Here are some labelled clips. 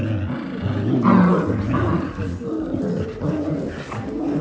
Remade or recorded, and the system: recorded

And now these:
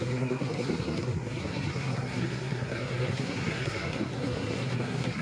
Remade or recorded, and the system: remade, codec, SNAC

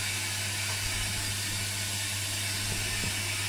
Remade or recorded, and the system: recorded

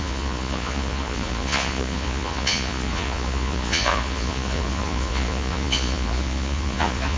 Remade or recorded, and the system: remade, vocoder, Vocos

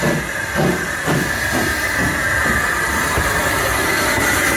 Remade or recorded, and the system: recorded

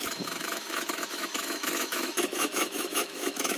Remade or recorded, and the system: remade, autoencoder, DAC-VAE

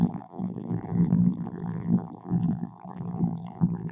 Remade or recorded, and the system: remade, vocoder, BigVGAN v2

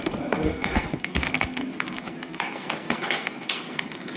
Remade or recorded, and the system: remade, codec, SNAC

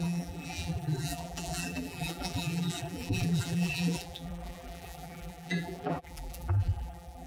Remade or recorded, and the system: remade, vocoder, BigVGAN v2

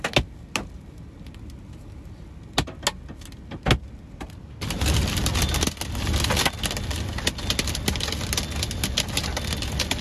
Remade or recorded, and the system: recorded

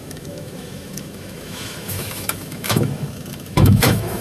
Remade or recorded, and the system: remade, autoencoder, DAC-VAE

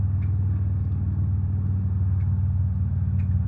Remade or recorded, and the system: recorded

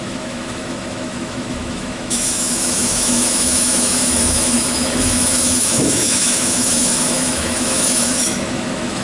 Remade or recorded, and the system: remade, autoencoder, DAC-VAE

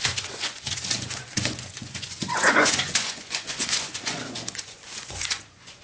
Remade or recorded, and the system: remade, vocoder, Vocos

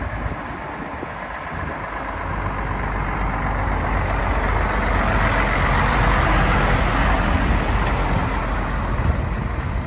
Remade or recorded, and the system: recorded